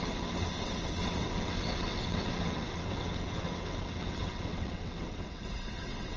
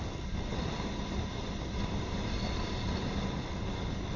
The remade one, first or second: first